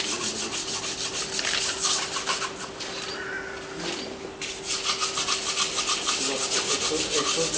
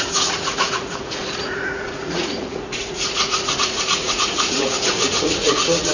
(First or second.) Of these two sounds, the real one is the first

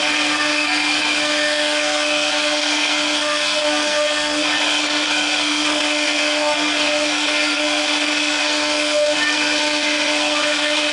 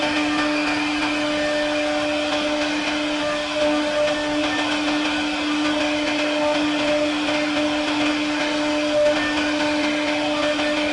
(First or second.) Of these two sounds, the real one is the second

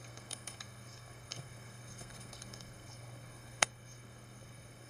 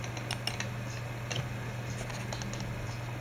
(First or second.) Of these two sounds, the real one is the second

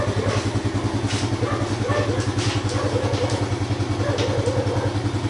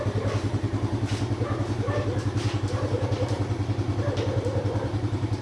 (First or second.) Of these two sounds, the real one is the first